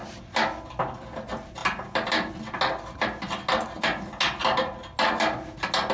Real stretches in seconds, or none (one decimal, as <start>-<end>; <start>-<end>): 0.0-5.9